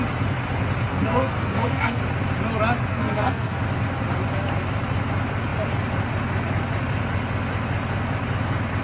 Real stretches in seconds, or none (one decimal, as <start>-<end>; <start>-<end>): 0.0-0.9; 2.0-2.9; 3.6-8.8